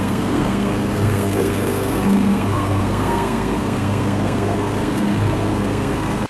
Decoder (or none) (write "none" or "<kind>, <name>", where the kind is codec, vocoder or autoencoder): codec, SNAC